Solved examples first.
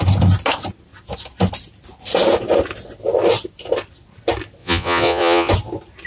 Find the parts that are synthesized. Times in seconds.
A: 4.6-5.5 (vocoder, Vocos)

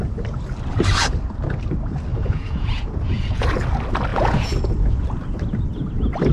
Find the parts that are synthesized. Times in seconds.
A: 2.1-3.5 (vocoder, Vocos); 4.1-4.7

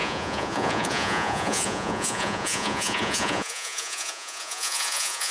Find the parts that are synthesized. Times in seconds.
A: 0.0-5.3 (vocoder, Vocos)

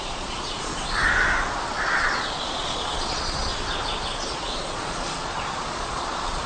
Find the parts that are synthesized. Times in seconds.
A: 0.0-0.7 (vocoder, Vocos); 1.8-3.5; 4.3-6.5